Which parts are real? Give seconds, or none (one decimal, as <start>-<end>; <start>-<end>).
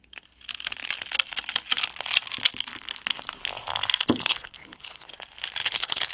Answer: 0.0-4.0; 5.1-5.6